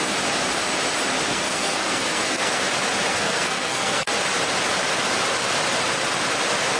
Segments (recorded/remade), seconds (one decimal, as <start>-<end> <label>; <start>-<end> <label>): 0.0-1.3 recorded; 1.3-2.6 remade; 2.6-3.1 recorded; 3.1-4.1 remade; 4.1-6.8 recorded